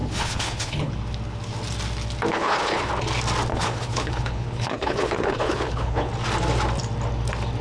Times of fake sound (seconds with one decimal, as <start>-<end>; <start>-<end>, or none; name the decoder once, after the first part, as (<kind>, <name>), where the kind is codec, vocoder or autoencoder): 0.0-0.9 (codec, HILCodec); 2.3-2.9; 3.5-6.1